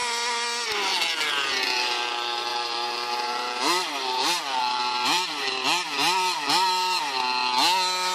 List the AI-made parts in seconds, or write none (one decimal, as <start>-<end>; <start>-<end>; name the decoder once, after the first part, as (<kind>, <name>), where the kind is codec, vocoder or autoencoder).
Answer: 2.5-7.0 (vocoder, BigVGAN v2)